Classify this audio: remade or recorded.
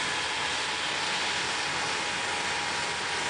recorded